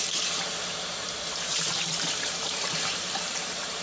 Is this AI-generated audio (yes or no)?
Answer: yes